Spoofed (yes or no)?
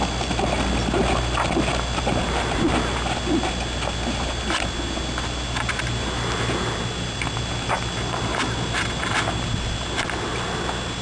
no